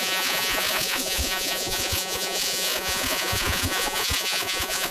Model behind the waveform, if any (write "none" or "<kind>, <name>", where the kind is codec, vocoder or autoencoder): vocoder, Vocos